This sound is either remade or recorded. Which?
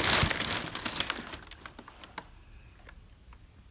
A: recorded